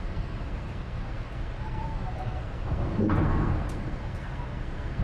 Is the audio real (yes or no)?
no